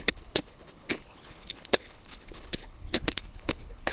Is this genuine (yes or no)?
no